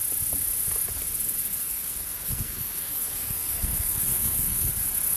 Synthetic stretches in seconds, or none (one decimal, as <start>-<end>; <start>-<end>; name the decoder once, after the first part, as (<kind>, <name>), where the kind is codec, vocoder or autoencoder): 1.6-4.7 (codec, SNAC)